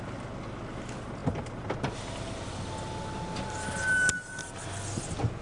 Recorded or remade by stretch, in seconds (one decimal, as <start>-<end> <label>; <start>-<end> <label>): 0.0-5.4 recorded